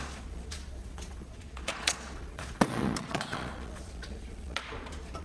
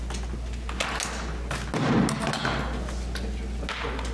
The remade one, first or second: first